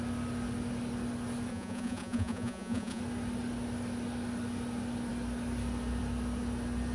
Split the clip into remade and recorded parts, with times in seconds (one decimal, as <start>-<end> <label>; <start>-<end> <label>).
0.0-1.5 recorded; 1.5-3.0 remade; 3.0-6.9 recorded